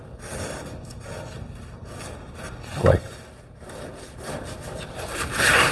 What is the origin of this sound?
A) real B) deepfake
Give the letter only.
A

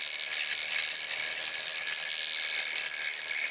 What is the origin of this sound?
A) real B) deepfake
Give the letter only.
A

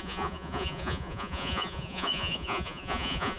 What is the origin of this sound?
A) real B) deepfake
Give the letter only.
B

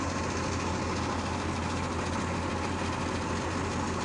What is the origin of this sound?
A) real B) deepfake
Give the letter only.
A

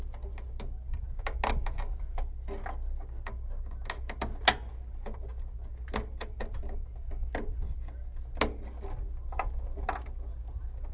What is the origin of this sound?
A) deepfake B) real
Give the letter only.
B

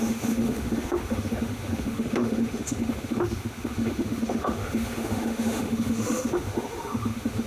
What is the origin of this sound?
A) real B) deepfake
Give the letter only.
B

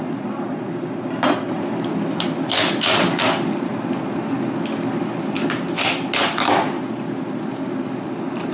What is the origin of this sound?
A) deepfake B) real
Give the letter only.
B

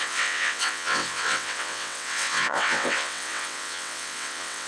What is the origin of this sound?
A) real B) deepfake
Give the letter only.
B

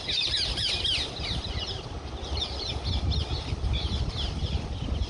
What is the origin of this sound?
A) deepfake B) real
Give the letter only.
B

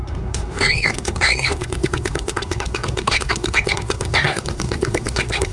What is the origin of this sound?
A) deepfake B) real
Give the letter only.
A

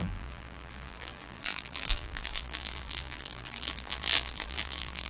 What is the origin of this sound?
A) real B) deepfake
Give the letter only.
B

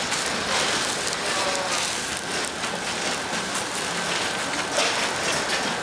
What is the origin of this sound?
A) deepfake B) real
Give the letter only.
B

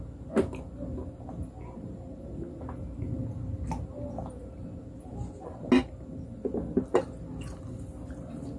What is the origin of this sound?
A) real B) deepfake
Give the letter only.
A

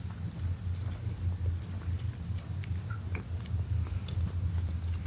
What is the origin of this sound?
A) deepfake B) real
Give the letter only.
B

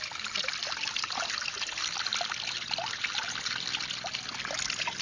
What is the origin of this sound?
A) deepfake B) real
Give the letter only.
B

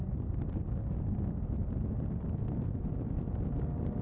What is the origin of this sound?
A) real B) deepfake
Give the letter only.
A